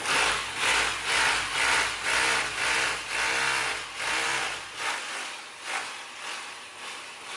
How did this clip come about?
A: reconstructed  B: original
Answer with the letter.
B